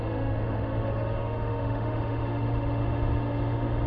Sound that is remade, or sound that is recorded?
remade